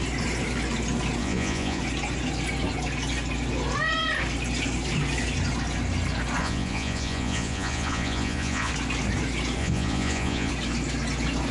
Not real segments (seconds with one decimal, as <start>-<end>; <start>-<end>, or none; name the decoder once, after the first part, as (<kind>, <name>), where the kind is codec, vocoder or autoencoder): 1.2-1.8 (vocoder, Vocos); 6.4-8.7; 9.6-10.5